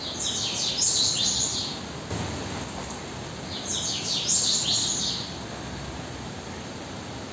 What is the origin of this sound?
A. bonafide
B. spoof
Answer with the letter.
A